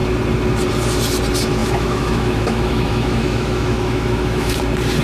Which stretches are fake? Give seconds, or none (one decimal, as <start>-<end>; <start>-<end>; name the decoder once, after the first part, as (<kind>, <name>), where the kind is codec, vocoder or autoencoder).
1.6-4.6 (autoencoder, DAC-VAE)